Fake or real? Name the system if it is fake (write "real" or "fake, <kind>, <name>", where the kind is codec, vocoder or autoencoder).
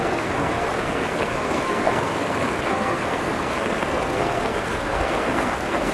fake, codec, SNAC